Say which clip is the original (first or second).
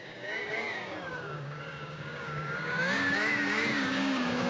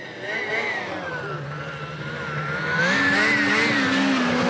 second